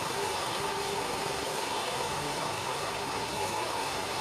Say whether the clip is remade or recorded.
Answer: remade